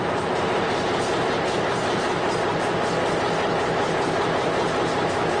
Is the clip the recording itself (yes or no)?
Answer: yes